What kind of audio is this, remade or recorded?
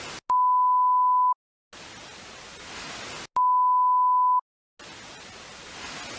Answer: recorded